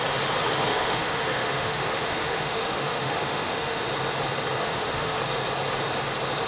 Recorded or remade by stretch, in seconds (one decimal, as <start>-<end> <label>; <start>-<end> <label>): 0.0-0.7 recorded; 0.7-3.9 remade; 3.9-4.6 recorded; 4.6-5.2 remade; 5.2-6.5 recorded